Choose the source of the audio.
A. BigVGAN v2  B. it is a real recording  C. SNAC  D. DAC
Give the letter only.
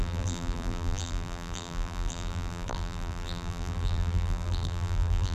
A